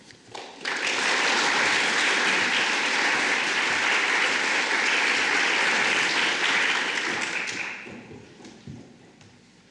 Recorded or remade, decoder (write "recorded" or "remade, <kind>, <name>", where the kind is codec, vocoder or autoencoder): recorded